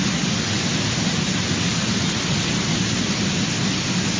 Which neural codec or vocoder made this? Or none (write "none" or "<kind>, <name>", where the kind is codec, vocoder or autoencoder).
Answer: none